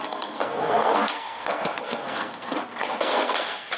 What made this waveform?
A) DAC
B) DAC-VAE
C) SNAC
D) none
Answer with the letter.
C